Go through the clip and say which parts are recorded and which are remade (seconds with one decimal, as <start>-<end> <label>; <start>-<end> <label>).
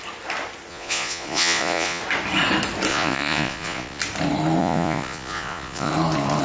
0.0-0.7 recorded; 0.7-2.0 remade; 2.0-2.9 recorded; 2.9-4.0 remade; 4.0-4.6 recorded; 4.6-5.9 remade; 5.9-6.4 recorded